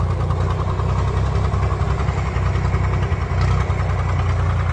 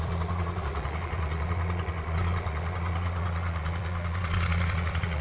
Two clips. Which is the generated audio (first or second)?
second